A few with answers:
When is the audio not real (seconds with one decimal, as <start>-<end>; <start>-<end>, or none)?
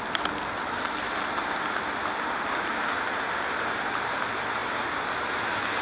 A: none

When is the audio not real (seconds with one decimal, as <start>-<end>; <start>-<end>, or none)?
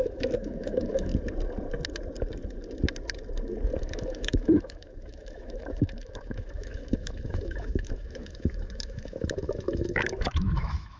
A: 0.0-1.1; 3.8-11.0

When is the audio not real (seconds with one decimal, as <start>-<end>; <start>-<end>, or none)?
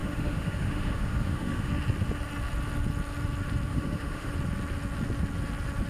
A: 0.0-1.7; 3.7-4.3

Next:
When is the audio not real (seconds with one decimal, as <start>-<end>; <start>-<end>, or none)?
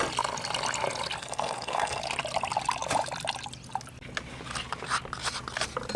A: 1.2-2.0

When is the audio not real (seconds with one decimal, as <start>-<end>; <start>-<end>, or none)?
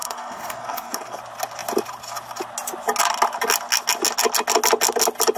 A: 0.0-1.2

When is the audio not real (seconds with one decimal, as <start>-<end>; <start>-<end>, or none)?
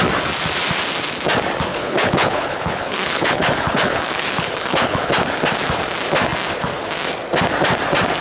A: 1.7-5.1